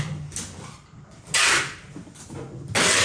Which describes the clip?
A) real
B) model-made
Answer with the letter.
A